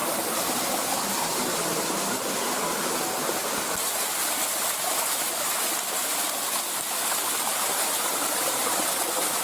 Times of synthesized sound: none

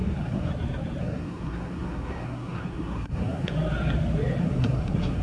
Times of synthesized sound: 0.0-0.5 (codec, SNAC); 1.0-3.5; 4.4-5.2

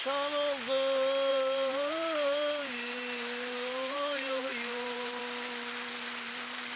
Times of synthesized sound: 1.3-5.2 (vocoder, BigVGAN v2)

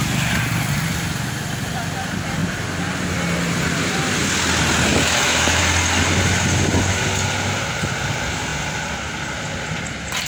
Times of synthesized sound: 4.9-5.6 (autoencoder, DAC-VAE)